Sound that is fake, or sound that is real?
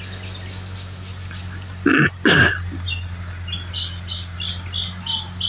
real